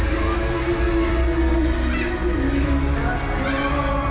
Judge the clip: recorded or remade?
recorded